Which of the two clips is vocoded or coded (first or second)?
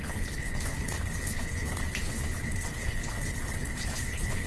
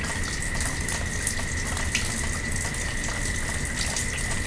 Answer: first